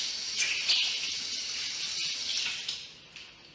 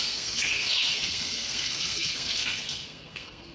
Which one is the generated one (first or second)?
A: second